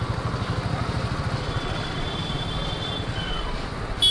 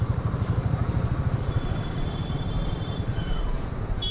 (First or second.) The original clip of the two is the first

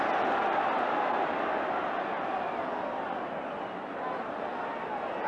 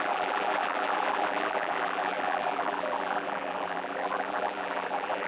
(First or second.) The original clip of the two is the first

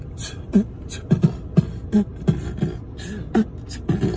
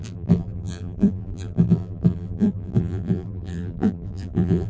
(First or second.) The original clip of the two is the first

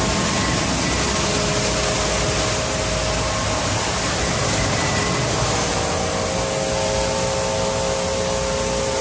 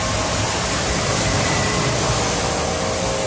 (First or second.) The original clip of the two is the first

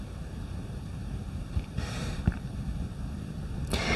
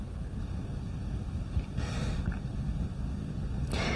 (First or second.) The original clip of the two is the second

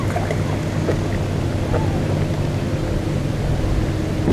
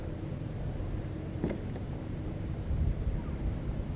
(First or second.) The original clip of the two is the first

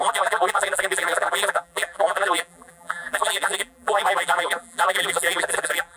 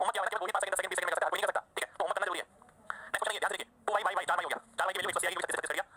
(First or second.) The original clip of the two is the second